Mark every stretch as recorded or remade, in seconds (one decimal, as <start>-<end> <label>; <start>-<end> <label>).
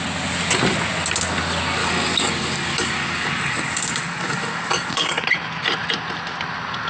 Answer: 0.0-1.8 recorded; 1.8-5.1 remade; 5.1-6.9 recorded